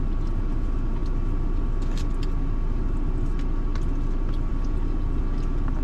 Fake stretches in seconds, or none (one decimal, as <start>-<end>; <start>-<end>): none